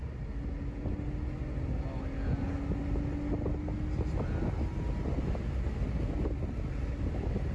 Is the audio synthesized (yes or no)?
no